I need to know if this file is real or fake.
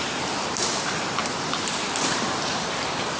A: fake